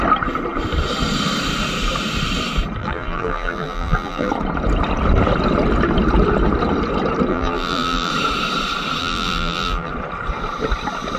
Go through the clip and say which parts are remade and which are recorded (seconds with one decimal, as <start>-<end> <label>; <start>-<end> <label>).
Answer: 0.0-2.8 recorded; 2.8-4.3 remade; 4.3-7.3 recorded; 7.3-8.1 remade; 8.1-9.0 recorded; 9.0-9.9 remade; 9.9-11.2 recorded